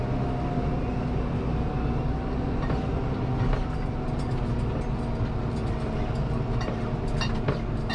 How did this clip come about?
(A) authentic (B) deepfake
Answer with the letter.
A